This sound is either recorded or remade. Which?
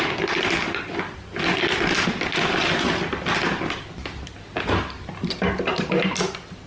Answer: recorded